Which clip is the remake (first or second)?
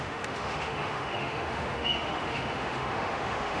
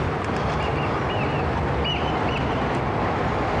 first